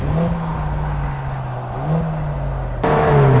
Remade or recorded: recorded